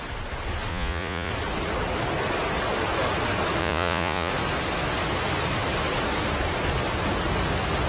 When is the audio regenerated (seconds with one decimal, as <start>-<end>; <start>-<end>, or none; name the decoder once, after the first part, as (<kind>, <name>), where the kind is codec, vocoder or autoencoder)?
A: 0.7-1.3 (vocoder, Vocos); 3.6-4.3